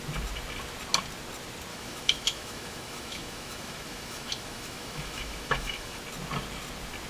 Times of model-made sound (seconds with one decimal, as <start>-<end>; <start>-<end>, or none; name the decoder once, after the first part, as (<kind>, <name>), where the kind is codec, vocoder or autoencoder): 1.7-6.0 (autoencoder, DAC-VAE)